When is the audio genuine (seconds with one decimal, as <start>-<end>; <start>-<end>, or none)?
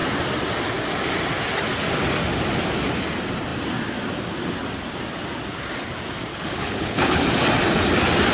0.0-6.3; 7.2-8.3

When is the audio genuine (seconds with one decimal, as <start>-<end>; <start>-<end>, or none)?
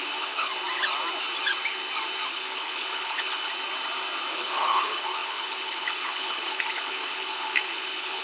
0.5-2.3; 3.5-4.3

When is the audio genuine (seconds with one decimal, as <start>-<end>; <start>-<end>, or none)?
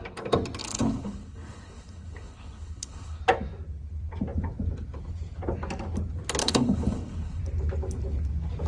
0.0-0.6; 3.2-6.4; 7.4-8.7